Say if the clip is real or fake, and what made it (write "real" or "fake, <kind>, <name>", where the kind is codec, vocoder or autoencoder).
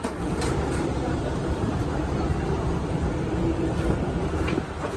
fake, vocoder, BigVGAN v2